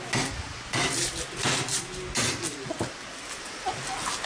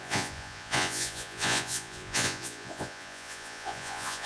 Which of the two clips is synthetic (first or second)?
second